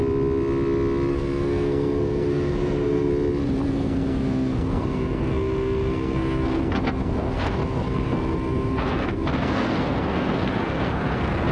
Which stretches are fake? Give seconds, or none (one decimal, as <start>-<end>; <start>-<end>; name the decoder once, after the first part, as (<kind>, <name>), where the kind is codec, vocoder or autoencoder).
1.1-3.1 (codec, SNAC); 3.7-11.5